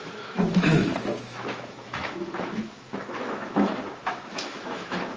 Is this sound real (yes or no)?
no